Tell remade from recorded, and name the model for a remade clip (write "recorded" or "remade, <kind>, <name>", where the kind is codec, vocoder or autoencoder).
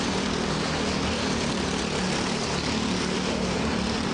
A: recorded